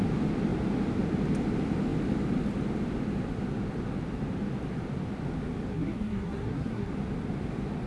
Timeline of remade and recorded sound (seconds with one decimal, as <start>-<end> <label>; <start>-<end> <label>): 0.0-5.7 recorded; 5.7-6.9 remade; 6.9-7.9 recorded